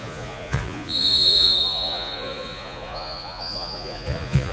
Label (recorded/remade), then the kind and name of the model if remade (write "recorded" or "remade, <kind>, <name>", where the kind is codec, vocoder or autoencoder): remade, vocoder, Vocos